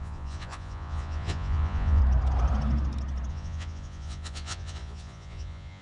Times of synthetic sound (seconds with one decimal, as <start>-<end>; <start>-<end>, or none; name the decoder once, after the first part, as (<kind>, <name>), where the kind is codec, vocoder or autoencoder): 0.0-2.0 (vocoder, Vocos); 3.3-5.8